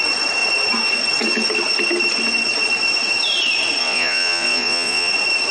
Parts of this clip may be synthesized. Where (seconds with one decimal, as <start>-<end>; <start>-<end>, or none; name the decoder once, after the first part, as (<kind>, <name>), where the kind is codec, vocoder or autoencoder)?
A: 3.8-5.1 (vocoder, Vocos)